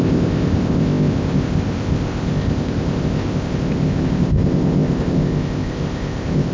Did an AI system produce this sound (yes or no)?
yes